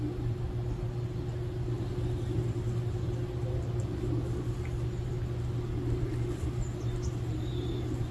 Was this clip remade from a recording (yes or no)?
no